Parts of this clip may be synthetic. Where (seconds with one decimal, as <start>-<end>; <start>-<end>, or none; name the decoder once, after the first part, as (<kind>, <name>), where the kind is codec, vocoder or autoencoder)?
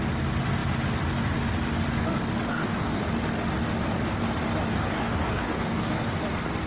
2.5-3.0 (codec, DAC); 4.7-6.1